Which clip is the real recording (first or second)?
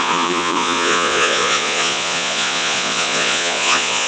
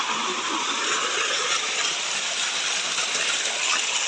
second